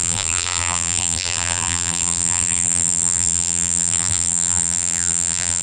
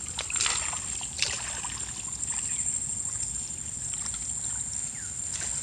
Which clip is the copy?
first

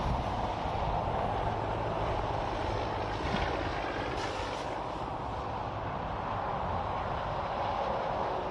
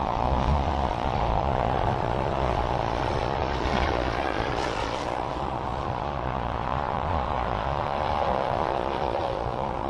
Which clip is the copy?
second